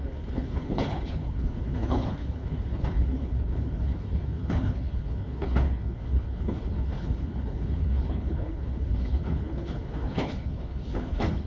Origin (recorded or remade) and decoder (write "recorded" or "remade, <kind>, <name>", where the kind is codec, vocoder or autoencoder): remade, codec, HILCodec